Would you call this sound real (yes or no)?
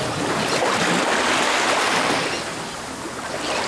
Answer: yes